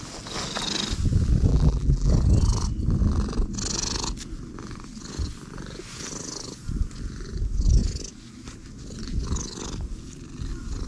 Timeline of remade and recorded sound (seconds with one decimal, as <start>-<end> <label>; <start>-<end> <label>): 0.0-1.5 recorded; 1.5-2.1 remade; 2.1-10.9 recorded